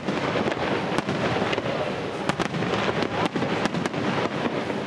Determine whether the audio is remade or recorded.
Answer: recorded